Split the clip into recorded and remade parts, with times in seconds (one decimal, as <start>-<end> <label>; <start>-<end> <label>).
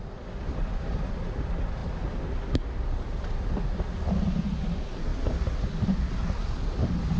0.0-7.2 recorded